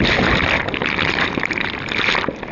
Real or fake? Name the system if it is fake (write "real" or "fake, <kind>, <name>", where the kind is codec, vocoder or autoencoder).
real